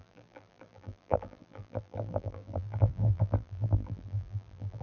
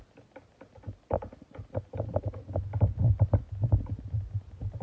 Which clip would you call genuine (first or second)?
second